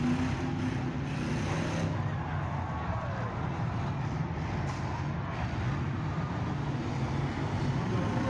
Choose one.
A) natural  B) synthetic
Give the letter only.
A